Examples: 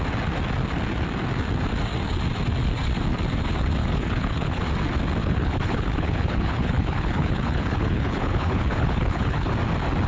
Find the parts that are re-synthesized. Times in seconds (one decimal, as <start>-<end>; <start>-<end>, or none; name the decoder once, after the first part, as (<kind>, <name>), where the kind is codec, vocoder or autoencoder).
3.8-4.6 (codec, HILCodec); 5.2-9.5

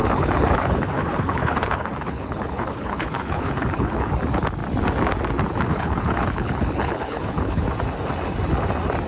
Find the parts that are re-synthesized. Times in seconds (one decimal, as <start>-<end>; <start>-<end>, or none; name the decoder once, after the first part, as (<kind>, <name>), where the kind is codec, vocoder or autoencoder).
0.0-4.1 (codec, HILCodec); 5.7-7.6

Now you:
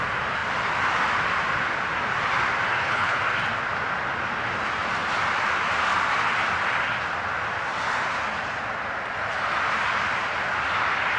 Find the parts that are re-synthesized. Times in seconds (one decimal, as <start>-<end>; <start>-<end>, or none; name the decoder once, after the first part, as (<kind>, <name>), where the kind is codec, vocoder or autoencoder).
2.7-3.2 (codec, HILCodec)

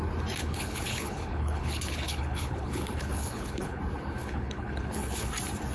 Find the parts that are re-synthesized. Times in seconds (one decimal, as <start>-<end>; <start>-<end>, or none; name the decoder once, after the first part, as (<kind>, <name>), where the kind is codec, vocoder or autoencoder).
0.4-3.8 (codec, HILCodec); 4.2-5.3

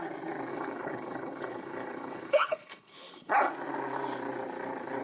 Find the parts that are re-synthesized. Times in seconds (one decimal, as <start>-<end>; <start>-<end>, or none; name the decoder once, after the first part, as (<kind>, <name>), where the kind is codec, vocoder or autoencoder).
0.5-3.5 (codec, HILCodec)

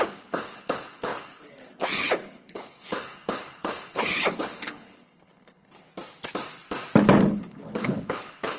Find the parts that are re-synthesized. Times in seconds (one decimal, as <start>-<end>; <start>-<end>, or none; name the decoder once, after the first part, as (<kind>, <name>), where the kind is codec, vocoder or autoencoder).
0.0-5.9 (codec, HILCodec); 7.3-8.6

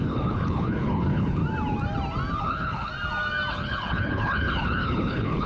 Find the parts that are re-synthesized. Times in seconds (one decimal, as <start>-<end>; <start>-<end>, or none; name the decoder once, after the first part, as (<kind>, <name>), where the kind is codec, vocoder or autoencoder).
0.0-1.4 (codec, HILCodec); 2.4-2.9; 3.5-5.5

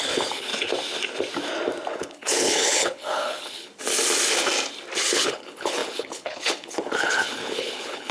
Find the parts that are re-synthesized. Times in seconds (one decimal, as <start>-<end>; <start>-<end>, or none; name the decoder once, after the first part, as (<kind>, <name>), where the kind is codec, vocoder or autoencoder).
0.0-0.5 (codec, HILCodec); 1.9-3.7; 5.1-8.1